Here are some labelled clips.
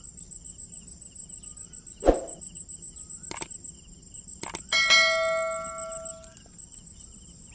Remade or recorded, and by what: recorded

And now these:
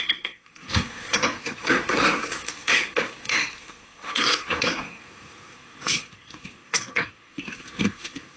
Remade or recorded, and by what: remade, codec, SNAC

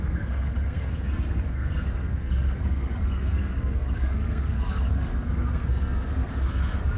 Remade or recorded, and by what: remade, codec, SNAC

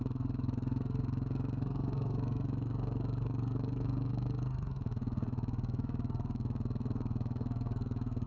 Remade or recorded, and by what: remade, codec, SNAC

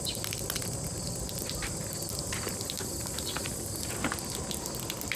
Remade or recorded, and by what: recorded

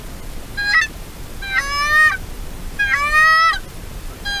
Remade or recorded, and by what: recorded